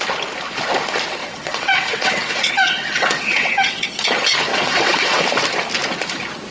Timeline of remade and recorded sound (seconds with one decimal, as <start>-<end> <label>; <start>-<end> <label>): 0.0-1.2 recorded; 1.2-3.9 remade; 3.9-4.5 recorded; 4.5-5.2 remade; 5.2-6.5 recorded